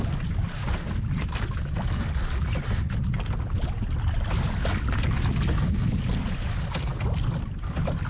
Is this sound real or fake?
real